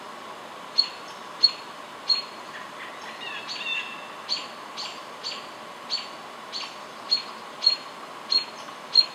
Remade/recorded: recorded